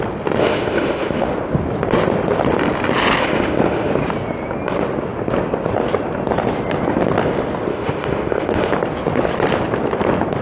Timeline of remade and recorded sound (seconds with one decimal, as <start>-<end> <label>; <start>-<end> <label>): 0.0-0.4 recorded; 0.4-1.3 remade; 1.3-3.2 recorded; 3.2-3.9 remade; 3.9-7.7 recorded; 7.7-8.7 remade; 8.7-10.4 recorded